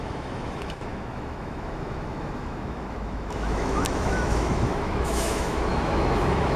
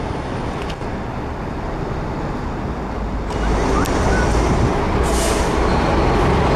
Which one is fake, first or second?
first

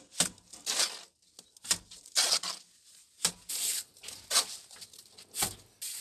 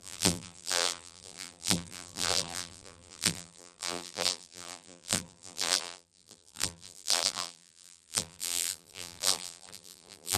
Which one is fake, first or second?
second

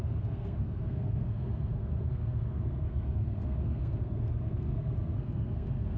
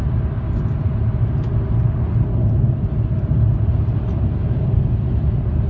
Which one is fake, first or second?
first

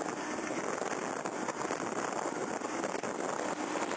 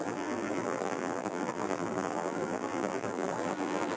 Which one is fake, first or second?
second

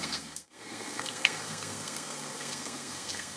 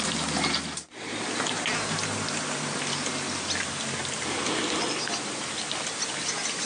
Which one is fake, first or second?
first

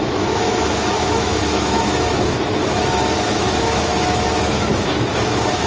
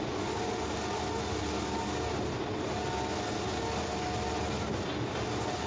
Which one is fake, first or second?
first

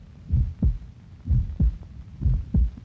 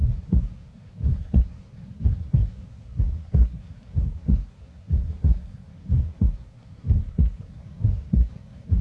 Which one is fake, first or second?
second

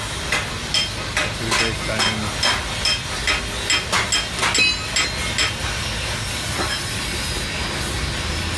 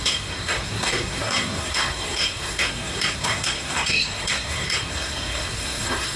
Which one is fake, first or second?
second